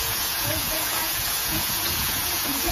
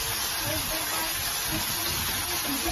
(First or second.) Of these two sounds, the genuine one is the second